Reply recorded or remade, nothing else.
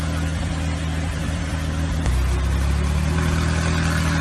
recorded